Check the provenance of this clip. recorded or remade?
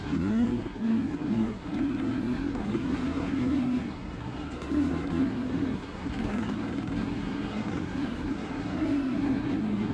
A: remade